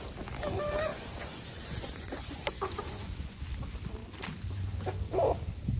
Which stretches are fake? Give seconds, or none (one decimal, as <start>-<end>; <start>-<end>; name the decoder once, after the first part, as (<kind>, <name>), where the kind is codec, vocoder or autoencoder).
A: 0.9-3.4 (vocoder, Vocos)